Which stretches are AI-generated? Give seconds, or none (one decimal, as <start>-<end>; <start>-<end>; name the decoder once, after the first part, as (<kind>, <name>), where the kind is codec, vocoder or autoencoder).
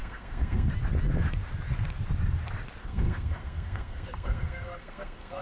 0.0-0.7 (codec, SNAC); 2.8-5.4